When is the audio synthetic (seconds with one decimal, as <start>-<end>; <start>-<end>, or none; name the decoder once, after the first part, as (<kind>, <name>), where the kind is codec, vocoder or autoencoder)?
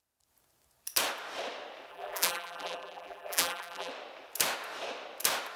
1.9-3.9 (vocoder, BigVGAN v2)